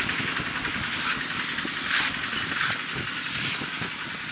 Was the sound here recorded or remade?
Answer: recorded